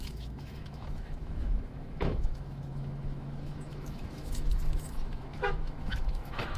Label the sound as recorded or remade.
remade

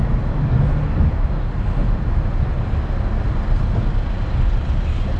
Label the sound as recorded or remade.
recorded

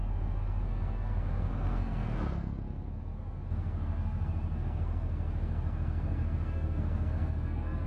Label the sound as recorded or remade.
remade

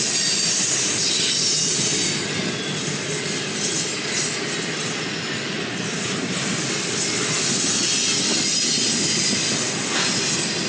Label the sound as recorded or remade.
recorded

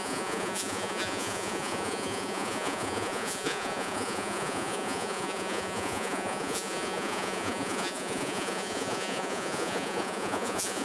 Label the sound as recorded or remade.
remade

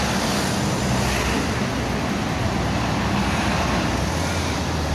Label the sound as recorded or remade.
recorded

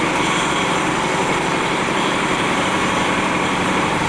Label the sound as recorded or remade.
remade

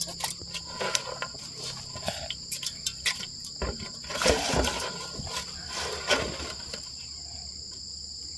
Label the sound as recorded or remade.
recorded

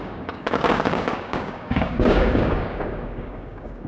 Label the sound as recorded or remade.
remade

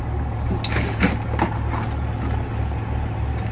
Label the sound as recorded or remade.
recorded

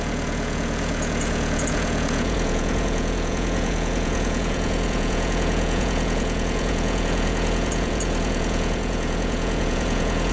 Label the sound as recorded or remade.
remade